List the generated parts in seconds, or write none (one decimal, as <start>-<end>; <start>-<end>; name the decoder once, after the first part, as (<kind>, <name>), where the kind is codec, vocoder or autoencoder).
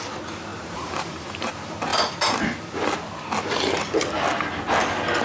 0.5-1.5 (vocoder, BigVGAN v2)